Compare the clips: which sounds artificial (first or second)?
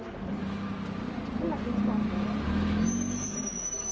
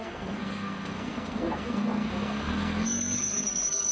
second